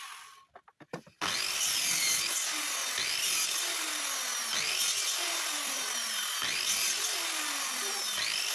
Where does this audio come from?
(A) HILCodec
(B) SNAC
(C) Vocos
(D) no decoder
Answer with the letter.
D